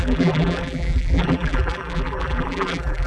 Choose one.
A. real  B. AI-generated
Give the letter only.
B